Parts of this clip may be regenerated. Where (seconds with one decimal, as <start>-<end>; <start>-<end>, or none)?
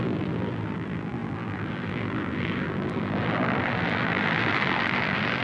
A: 0.0-5.4